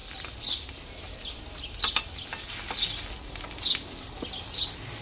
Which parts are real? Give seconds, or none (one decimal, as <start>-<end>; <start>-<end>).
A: 0.0-5.0